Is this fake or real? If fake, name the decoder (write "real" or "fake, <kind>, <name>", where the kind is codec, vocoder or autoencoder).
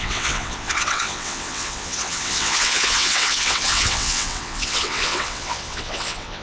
fake, vocoder, WaveNeXt